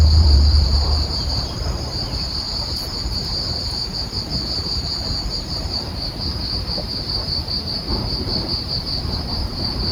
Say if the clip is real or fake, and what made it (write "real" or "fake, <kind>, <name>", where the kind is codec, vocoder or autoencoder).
fake, vocoder, BigVGAN v2